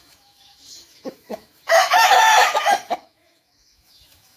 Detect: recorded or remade remade